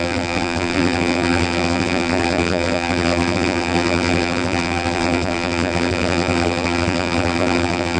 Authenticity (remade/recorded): remade